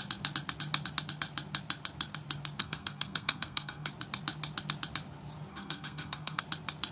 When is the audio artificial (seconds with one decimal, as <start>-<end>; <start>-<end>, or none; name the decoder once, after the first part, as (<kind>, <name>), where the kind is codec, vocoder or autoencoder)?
2.6-3.9 (codec, SNAC); 5.5-6.4